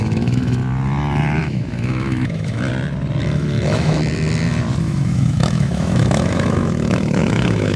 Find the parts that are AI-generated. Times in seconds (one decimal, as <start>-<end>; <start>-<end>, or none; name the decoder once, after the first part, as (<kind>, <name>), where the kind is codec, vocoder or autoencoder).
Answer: 0.0-0.6 (autoencoder, DAC-VAE); 1.4-2.7; 3.2-4.0; 4.8-7.8